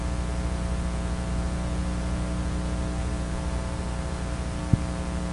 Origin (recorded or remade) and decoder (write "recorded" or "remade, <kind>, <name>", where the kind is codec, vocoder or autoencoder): recorded